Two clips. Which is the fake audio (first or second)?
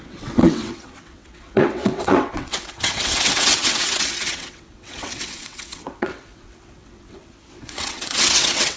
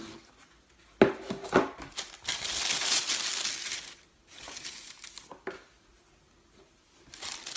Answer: first